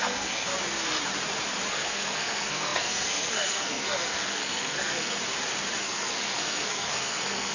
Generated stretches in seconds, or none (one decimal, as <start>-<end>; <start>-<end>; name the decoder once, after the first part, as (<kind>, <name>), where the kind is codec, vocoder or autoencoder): 0.0-0.5 (codec, SNAC); 1.7-5.2; 5.8-7.5

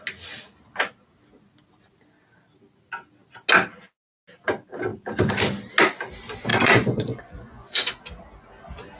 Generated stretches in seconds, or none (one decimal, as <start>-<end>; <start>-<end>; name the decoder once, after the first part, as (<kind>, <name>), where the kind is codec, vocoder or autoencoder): 6.5-8.0 (vocoder, Vocos)

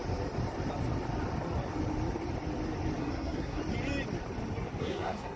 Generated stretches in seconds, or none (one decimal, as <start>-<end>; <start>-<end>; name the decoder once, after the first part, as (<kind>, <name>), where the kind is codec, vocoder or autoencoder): 3.0-3.6 (codec, SNAC); 4.8-5.4

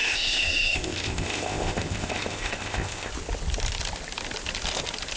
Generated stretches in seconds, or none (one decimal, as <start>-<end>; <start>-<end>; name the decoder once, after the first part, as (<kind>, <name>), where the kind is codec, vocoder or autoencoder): 0.0-3.1 (codec, ZipCodec)

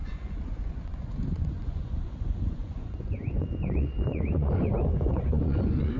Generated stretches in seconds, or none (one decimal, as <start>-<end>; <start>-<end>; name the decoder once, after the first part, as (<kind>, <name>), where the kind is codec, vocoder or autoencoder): 0.0-6.0 (vocoder, Vocos)

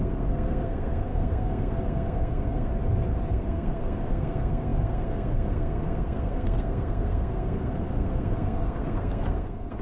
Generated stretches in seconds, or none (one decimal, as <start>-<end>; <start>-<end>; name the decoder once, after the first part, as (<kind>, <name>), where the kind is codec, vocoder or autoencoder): 0.0-2.7 (codec, SNAC); 3.3-9.8